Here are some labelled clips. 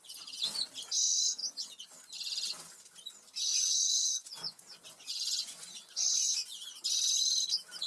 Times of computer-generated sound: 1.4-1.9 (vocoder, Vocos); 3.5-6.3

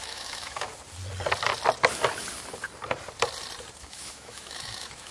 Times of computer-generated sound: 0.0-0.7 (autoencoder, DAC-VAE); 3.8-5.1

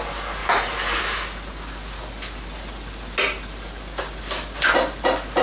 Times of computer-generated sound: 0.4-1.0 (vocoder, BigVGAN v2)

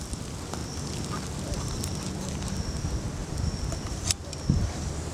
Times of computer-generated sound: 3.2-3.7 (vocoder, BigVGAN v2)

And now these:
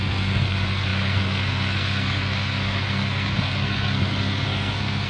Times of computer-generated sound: 0.0-5.1 (codec, SNAC)